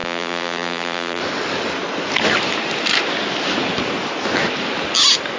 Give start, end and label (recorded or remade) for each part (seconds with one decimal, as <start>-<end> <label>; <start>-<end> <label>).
0.0-1.2 remade; 1.2-5.4 recorded